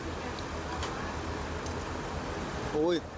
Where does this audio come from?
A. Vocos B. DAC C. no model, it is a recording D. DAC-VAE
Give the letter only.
C